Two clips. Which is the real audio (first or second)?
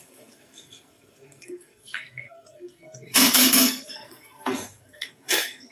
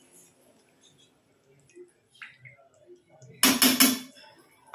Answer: second